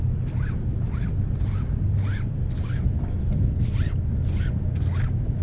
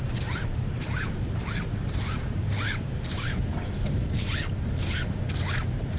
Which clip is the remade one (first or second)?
second